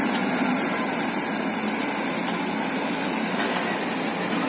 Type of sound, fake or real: real